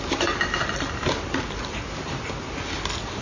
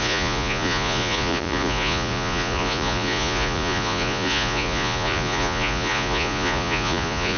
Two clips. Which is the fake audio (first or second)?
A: second